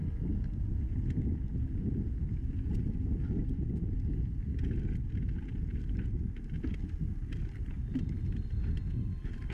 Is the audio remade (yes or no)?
no